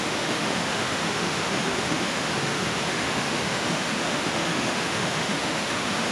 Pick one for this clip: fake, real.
fake